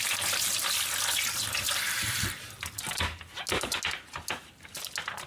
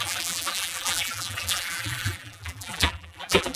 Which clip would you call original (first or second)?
first